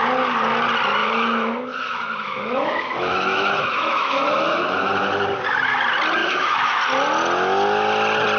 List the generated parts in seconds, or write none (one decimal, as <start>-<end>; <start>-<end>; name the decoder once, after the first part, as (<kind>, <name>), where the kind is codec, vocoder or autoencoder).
1.0-4.6 (autoencoder, DAC-VAE); 6.2-6.8